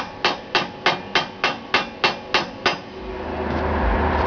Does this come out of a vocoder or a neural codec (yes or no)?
no